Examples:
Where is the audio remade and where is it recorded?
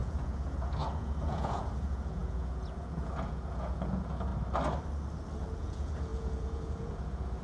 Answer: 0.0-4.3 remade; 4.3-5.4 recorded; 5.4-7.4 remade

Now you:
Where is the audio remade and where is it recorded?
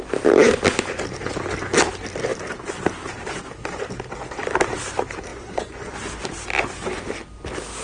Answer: 0.0-5.3 recorded; 5.3-6.0 remade; 6.0-7.8 recorded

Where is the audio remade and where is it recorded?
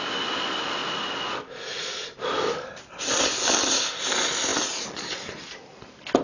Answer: 0.0-6.2 recorded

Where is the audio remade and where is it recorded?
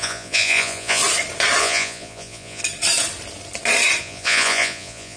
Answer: 0.0-1.0 remade; 1.0-1.6 recorded; 1.6-2.6 remade; 2.6-4.0 recorded; 4.0-5.2 remade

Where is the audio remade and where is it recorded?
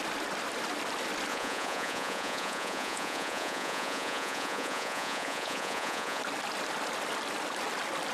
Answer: 0.0-1.3 recorded; 1.3-6.2 remade; 6.2-8.1 recorded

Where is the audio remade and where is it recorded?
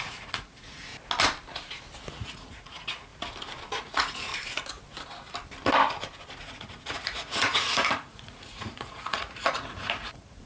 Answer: 0.0-0.9 remade; 0.9-2.1 recorded; 2.1-3.1 remade; 3.1-3.8 recorded; 3.8-4.3 remade; 4.3-6.4 recorded; 6.4-10.5 remade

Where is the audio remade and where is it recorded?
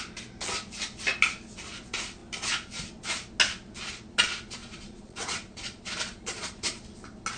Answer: 0.0-4.6 recorded; 4.6-6.8 remade; 6.8-7.4 recorded